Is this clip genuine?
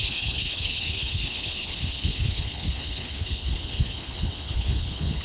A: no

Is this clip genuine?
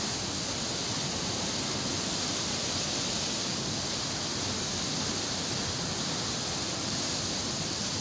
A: yes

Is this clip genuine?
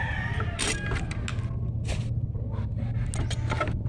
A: yes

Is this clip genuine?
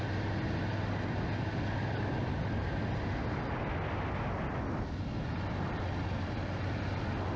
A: yes